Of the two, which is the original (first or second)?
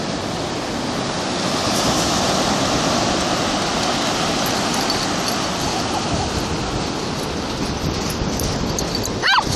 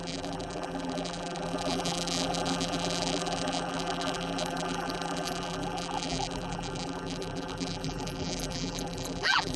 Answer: first